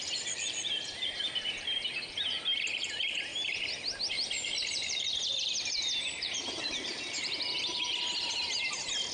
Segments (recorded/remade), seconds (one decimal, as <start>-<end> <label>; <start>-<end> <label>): 0.0-7.7 remade; 7.7-8.6 recorded; 8.6-9.1 remade